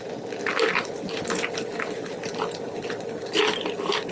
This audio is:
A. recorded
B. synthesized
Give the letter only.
A